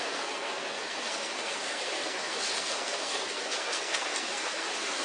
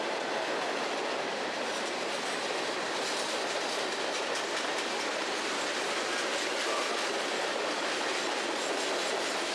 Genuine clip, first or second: second